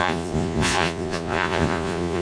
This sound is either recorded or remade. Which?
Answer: remade